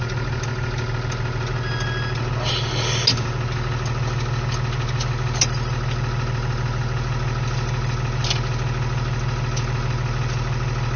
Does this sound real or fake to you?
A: real